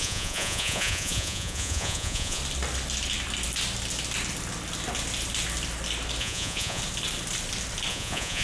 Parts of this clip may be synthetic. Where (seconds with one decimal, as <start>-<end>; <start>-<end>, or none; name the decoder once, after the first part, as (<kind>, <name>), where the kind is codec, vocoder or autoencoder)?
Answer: 0.0-2.4 (vocoder, Vocos); 6.2-6.8; 7.9-8.4